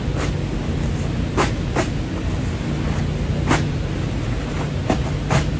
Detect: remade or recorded recorded